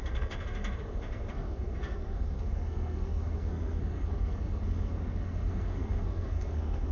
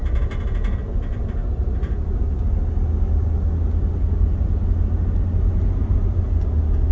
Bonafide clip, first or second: second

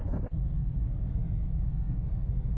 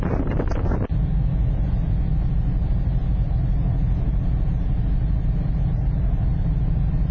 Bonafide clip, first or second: second